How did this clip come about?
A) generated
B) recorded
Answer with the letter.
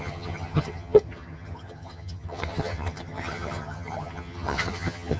A